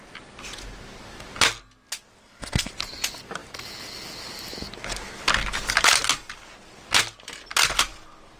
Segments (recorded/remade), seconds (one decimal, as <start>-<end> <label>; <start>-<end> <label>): 0.0-2.2 recorded; 2.2-2.7 remade; 2.7-8.4 recorded

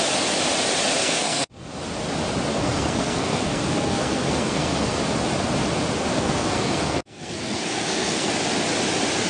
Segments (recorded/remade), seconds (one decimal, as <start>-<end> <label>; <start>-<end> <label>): 0.0-1.0 recorded; 1.0-1.7 remade; 1.7-2.5 recorded; 2.5-5.0 remade; 5.0-6.1 recorded; 6.1-8.3 remade; 8.3-9.3 recorded

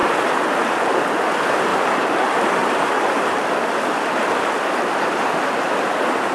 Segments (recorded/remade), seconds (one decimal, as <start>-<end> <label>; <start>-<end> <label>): 0.0-1.7 recorded; 1.7-2.2 remade; 2.2-2.6 recorded; 2.6-3.3 remade; 3.3-6.3 recorded

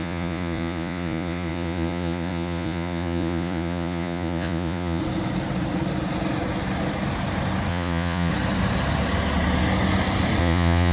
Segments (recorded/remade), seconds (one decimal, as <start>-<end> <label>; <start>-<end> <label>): 0.0-5.0 remade; 5.0-7.7 recorded; 7.7-8.3 remade; 8.3-10.4 recorded; 10.4-10.9 remade

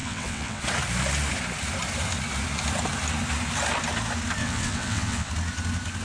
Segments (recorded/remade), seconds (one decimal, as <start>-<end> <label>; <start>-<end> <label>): 0.0-0.6 remade; 0.6-4.4 recorded; 4.4-5.3 remade; 5.3-6.0 recorded

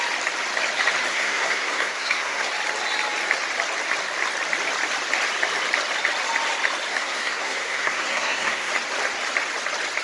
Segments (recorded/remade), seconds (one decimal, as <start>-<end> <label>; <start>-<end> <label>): 0.0-1.1 recorded; 1.1-2.5 remade; 2.5-6.9 recorded; 6.9-8.7 remade; 8.7-10.0 recorded